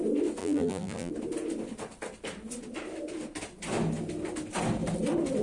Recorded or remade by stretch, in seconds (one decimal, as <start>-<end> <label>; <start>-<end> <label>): 0.0-0.4 recorded; 0.4-1.1 remade; 1.1-5.4 recorded